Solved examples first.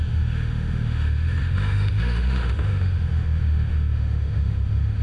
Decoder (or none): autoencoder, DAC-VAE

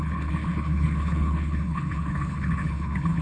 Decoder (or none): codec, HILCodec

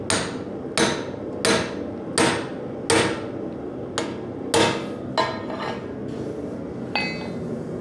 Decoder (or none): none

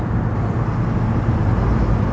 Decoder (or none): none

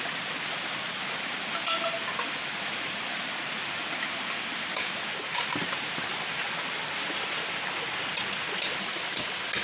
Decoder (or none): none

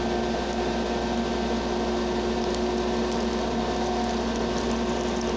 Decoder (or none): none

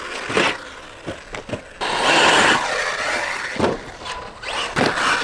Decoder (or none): none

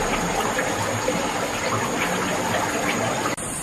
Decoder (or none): none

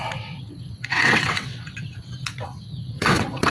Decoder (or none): vocoder, WaveNeXt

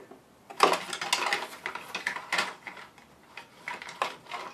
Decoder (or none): none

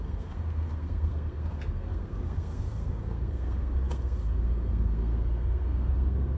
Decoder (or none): codec, SNAC